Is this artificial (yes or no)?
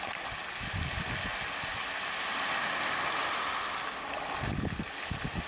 no